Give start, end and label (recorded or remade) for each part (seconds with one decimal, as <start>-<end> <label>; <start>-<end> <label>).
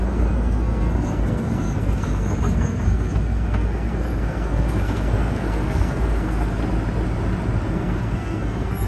0.0-6.6 remade; 6.6-7.7 recorded; 7.7-8.9 remade